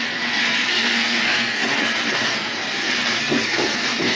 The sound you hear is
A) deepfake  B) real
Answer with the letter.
A